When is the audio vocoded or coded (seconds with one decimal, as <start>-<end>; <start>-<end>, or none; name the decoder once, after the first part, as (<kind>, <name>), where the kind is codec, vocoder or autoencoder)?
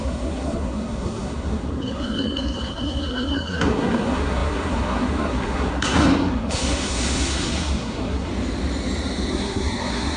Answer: 0.0-8.3 (codec, SNAC); 9.3-10.2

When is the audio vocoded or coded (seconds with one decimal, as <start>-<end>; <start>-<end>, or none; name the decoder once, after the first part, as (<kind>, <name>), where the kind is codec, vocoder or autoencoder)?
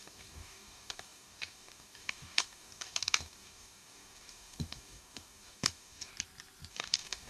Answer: 0.0-6.1 (codec, DAC); 6.7-7.3